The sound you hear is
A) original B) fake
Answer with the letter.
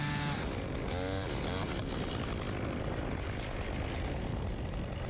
A